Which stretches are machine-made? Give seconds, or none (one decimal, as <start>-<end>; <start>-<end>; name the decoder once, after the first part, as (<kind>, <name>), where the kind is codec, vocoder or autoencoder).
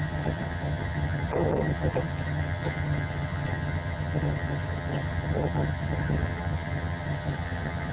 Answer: 0.0-7.9 (vocoder, HiFi-GAN)